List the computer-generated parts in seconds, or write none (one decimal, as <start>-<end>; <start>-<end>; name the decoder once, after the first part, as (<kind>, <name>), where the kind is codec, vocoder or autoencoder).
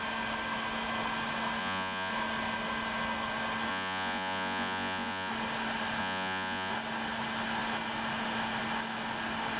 1.6-2.1 (vocoder, Vocos); 3.7-5.3; 6.0-6.7